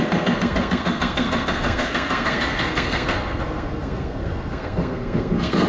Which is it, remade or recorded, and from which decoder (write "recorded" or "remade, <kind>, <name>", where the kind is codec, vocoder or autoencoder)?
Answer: remade, codec, SNAC